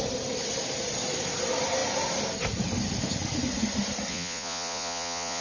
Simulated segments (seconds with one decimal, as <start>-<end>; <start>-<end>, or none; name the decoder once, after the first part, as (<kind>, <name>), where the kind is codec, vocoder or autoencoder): 4.1-5.4 (vocoder, Vocos)